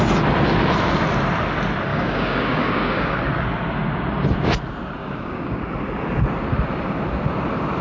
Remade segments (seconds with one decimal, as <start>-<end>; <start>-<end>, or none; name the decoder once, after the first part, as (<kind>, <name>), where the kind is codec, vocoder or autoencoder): 1.9-3.2 (codec, DAC); 5.0-5.6